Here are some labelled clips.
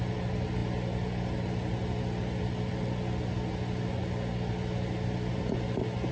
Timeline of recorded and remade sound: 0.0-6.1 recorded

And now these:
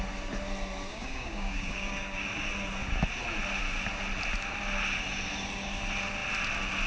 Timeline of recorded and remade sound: 0.0-0.9 recorded; 0.9-2.3 remade; 2.3-6.9 recorded

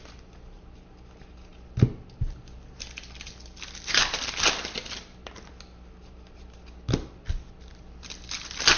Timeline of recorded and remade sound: 0.0-8.8 recorded

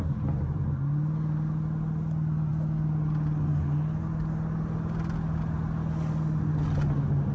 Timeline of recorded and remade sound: 0.0-7.3 recorded

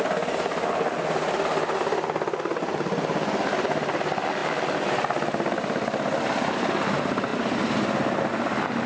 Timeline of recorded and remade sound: 0.0-8.9 recorded

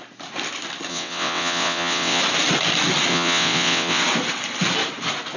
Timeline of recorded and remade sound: 0.0-0.9 recorded; 0.9-2.2 remade; 2.2-3.1 recorded; 3.1-4.0 remade; 4.0-5.4 recorded